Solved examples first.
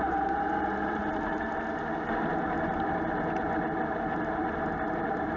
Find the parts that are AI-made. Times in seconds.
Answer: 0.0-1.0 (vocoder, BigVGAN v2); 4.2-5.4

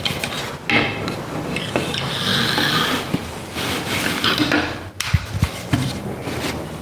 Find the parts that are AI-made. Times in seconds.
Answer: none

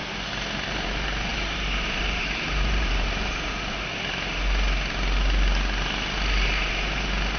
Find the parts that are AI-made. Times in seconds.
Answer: 1.3-3.5 (vocoder, BigVGAN v2)

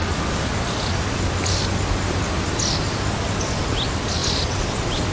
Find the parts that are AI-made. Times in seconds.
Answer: none